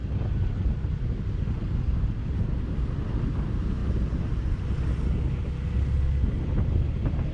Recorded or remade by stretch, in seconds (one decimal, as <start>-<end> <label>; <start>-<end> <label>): 0.0-7.3 recorded